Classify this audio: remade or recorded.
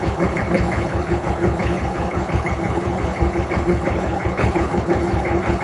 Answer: remade